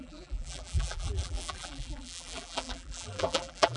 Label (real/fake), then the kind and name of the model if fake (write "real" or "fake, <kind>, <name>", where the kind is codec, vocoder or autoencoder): fake, vocoder, BigVGAN v2